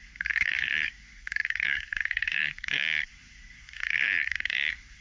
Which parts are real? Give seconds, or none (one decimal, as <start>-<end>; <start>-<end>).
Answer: none